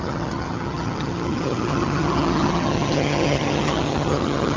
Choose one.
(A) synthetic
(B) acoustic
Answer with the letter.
A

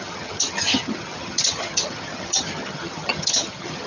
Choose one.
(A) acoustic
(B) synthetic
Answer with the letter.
B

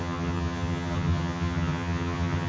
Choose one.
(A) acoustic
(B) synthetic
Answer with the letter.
B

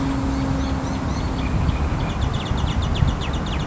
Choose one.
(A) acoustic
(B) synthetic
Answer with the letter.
A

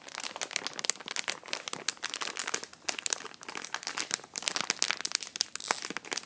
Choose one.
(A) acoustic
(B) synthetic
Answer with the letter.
A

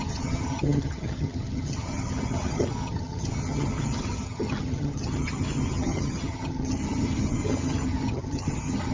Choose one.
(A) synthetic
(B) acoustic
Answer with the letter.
A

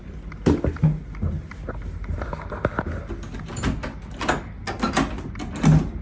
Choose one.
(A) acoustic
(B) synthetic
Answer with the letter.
A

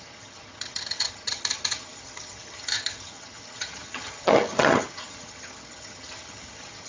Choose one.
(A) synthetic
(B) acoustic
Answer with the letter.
A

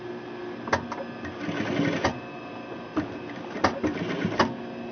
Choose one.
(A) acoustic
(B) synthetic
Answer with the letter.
A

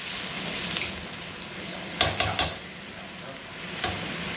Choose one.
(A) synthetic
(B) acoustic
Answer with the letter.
B